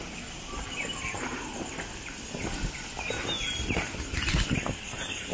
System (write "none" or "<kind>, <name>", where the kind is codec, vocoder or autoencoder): none